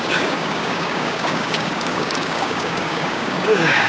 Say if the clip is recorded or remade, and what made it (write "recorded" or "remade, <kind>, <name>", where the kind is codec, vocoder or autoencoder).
remade, codec, DAC